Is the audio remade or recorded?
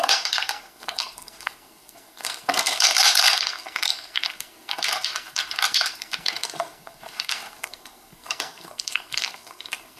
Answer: remade